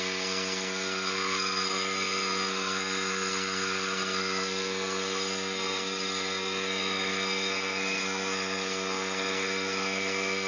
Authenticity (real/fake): fake